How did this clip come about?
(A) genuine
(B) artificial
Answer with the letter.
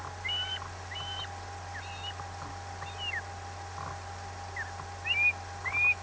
A